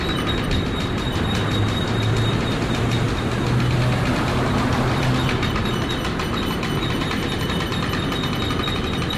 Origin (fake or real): real